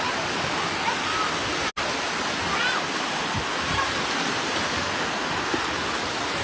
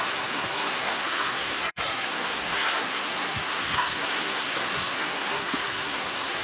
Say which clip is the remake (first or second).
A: second